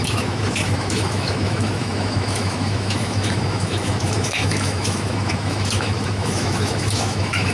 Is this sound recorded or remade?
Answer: remade